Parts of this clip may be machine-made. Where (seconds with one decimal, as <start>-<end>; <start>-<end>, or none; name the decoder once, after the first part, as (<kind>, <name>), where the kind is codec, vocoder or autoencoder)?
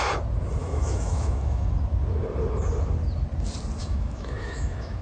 0.6-1.7 (autoencoder, DAC-VAE); 3.8-5.0